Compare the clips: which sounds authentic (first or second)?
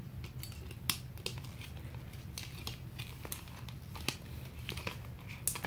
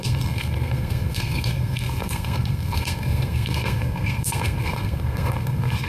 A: first